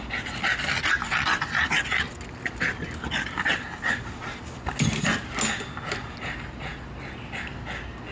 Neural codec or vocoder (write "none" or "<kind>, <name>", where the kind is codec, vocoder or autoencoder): none